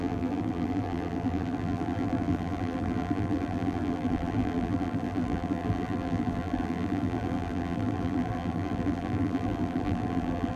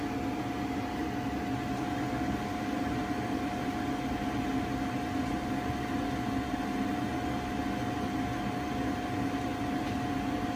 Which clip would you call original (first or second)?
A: second